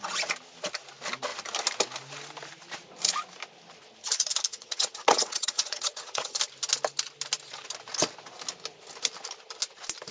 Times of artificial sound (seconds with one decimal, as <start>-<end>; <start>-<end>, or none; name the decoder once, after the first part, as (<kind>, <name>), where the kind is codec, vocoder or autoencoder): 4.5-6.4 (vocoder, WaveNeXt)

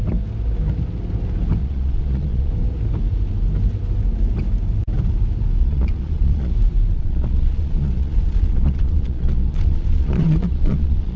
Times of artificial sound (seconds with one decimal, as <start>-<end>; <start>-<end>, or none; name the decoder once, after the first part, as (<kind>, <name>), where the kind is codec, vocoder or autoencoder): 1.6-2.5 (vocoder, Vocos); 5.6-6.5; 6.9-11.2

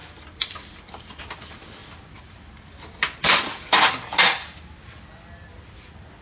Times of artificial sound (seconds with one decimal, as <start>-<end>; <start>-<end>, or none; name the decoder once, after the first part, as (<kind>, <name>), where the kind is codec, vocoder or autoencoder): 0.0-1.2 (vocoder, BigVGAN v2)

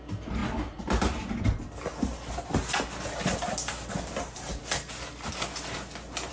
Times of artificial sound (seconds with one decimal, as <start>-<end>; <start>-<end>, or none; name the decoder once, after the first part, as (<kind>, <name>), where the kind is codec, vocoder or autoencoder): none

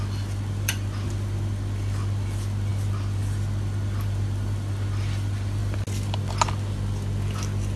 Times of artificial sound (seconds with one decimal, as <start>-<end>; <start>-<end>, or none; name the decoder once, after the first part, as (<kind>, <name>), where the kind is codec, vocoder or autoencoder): none